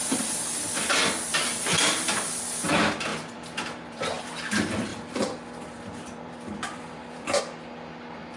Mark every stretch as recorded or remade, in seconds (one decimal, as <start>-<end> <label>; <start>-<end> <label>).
0.0-0.9 remade; 0.9-1.3 recorded; 1.3-2.4 remade; 2.4-3.1 recorded; 3.1-4.3 remade; 4.3-4.9 recorded; 4.9-7.4 remade; 7.4-8.4 recorded